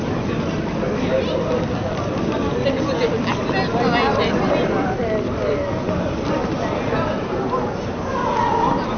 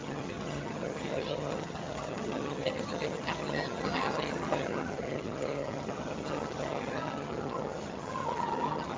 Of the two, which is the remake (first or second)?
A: second